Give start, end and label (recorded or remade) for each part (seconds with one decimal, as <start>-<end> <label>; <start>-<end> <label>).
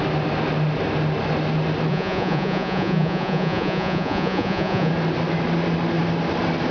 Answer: 0.0-1.9 recorded; 1.9-4.9 remade; 4.9-6.7 recorded